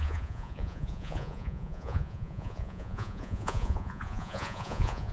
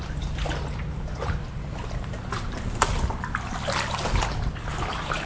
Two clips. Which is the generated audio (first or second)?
first